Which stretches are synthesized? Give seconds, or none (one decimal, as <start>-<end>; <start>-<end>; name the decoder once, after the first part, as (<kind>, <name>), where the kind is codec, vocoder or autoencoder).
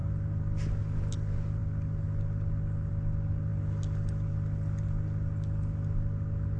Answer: none